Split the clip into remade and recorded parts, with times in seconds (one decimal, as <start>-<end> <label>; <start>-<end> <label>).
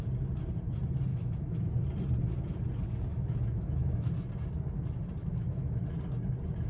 0.0-1.1 recorded; 1.1-1.7 remade; 1.7-3.1 recorded; 3.1-4.1 remade; 4.1-5.2 recorded; 5.2-5.8 remade; 5.8-6.7 recorded